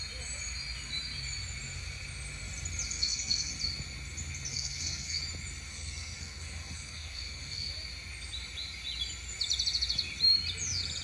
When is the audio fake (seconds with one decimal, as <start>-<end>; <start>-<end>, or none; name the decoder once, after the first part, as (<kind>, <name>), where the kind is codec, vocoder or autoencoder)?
2.9-3.5 (codec, SNAC); 4.5-5.2; 5.7-7.7